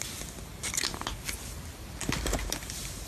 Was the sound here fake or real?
real